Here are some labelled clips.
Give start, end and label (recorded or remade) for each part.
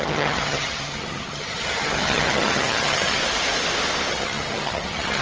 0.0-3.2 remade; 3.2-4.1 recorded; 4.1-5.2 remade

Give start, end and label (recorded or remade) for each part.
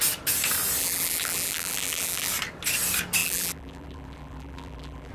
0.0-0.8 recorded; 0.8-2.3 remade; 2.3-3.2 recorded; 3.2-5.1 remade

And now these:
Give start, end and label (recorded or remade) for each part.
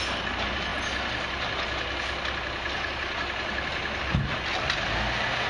0.0-5.5 recorded